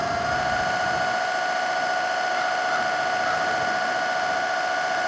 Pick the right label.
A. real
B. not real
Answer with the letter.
A